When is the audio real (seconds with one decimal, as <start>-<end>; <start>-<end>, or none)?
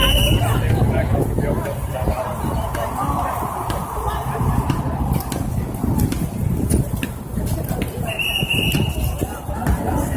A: 0.0-10.2